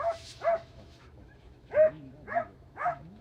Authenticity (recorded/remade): remade